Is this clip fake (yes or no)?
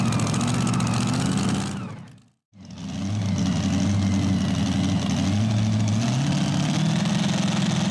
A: no